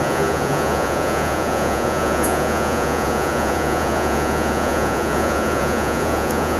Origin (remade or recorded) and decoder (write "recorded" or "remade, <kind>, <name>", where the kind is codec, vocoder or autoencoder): remade, vocoder, Vocos